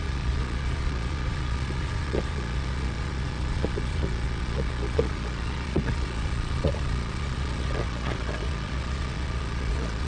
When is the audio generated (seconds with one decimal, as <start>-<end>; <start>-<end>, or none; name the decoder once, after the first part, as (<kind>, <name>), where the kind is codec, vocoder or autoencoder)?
0.0-10.1 (vocoder, Vocos)